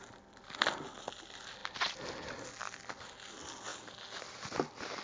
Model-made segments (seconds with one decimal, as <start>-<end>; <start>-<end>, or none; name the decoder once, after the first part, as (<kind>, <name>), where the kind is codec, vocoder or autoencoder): none